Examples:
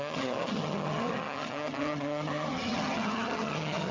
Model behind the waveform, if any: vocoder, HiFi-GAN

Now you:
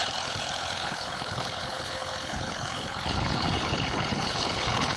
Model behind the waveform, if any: codec, HILCodec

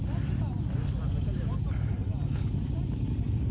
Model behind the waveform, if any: none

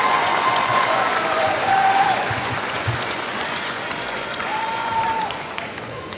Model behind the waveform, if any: vocoder, Vocos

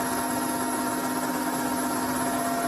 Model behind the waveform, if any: none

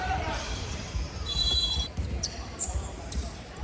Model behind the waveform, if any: vocoder, BigVGAN v2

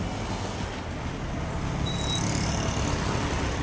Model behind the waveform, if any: none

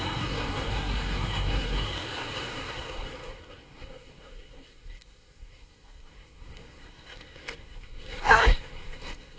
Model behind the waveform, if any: codec, SNAC